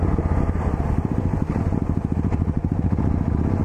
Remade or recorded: recorded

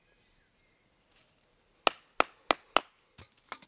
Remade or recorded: recorded